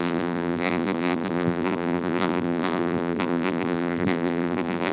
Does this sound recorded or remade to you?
remade